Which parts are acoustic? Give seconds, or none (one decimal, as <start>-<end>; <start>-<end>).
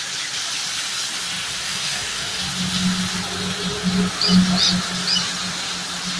0.0-1.7; 2.4-6.2